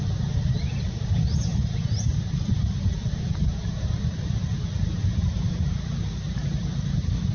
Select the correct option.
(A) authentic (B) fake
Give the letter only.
B